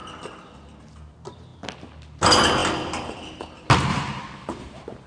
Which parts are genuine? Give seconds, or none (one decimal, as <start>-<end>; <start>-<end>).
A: 0.0-3.9